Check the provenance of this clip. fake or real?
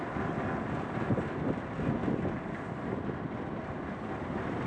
real